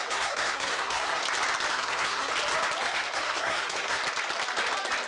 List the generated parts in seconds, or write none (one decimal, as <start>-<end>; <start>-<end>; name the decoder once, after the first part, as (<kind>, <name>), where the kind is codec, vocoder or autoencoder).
0.0-1.2 (codec, SNAC); 1.7-2.3; 2.8-4.0